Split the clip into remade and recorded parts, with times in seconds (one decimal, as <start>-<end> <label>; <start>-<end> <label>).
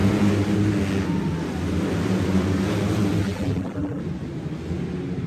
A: 0.0-3.2 recorded; 3.2-4.0 remade; 4.0-5.3 recorded